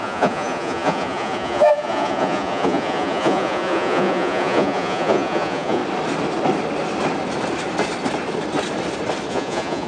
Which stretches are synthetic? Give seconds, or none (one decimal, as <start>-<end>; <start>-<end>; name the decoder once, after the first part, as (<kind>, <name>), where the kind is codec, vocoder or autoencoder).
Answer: 0.0-5.8 (vocoder, Vocos); 9.3-9.9